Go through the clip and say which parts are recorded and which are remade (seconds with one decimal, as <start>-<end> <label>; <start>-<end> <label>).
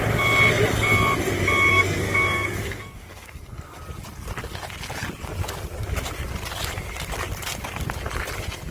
0.0-1.7 recorded; 1.7-3.8 remade; 3.8-8.7 recorded